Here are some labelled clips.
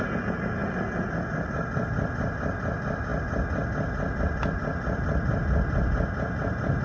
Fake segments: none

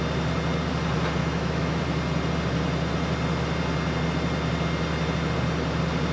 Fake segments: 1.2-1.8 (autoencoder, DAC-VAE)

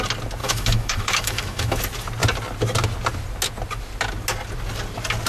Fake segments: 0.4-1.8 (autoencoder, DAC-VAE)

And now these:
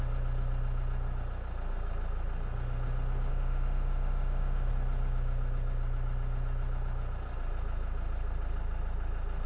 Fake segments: 3.3-4.7 (autoencoder, DAC-VAE)

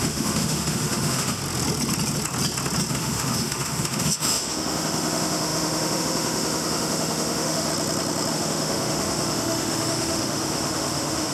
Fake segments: 0.0-1.4 (autoencoder, DAC-VAE); 2.9-7.7; 8.3-11.3

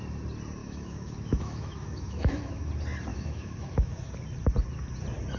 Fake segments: 0.6-2.7 (autoencoder, DAC-VAE); 3.1-4.1

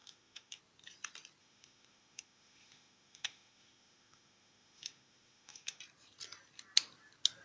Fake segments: 0.0-0.6 (autoencoder, DAC-VAE); 1.4-5.8